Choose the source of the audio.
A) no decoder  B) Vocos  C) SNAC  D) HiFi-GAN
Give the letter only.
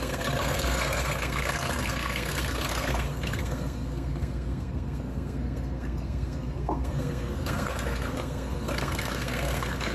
C